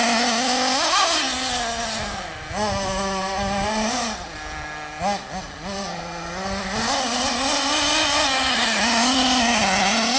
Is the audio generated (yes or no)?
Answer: no